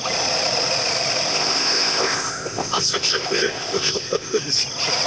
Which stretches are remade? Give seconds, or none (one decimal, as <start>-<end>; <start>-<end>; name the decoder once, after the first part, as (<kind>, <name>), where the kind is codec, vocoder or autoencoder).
1.3-4.4 (codec, ZipCodec)